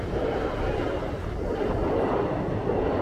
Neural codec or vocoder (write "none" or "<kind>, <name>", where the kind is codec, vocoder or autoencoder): none